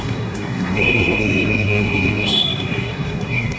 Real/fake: fake